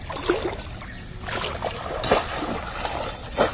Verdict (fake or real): real